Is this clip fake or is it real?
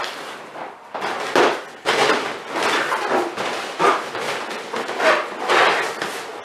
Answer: real